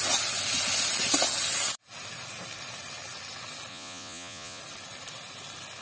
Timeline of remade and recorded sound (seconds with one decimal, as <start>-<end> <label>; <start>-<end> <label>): 0.0-3.7 recorded; 3.7-4.6 remade; 4.6-5.8 recorded